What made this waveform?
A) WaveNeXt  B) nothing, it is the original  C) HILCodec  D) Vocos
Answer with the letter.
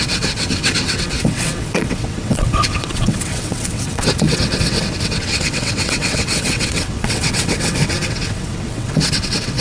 A